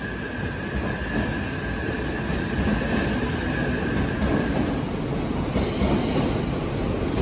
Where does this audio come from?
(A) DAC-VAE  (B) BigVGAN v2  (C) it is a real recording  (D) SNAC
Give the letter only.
C